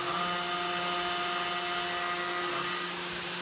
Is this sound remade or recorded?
recorded